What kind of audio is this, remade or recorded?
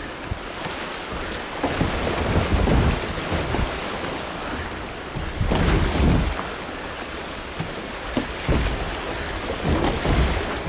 recorded